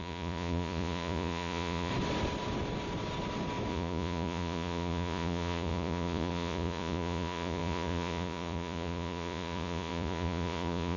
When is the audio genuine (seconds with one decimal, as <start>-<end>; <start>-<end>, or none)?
1.9-3.7